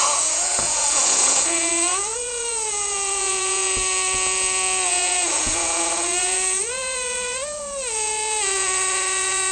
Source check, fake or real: fake